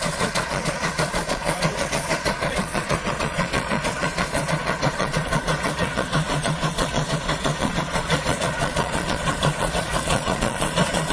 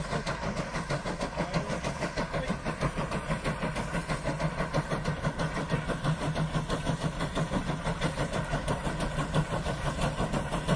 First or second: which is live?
second